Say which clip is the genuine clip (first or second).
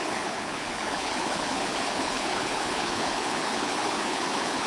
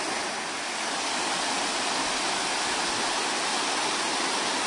second